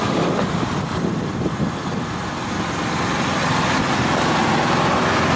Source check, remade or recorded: recorded